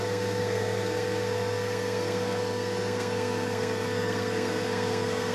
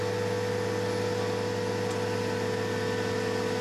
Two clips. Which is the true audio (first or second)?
second